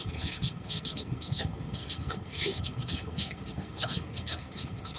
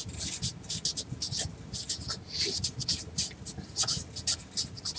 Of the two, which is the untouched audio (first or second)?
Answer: second